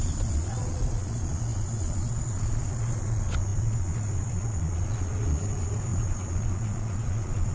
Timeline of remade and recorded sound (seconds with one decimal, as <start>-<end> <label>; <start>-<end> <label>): 0.0-7.5 remade